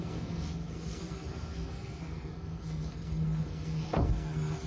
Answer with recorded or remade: remade